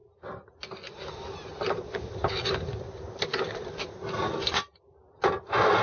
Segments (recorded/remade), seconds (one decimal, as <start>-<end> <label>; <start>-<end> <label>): 0.0-5.8 recorded